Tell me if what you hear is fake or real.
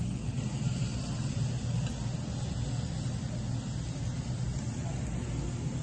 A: real